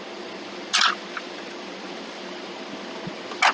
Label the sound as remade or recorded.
recorded